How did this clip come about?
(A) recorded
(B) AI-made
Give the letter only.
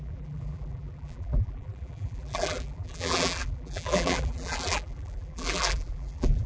B